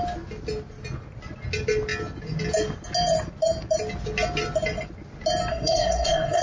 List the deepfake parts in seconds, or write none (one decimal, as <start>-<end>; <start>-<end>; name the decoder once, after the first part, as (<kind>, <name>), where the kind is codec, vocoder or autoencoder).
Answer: 5.5-6.4 (codec, SNAC)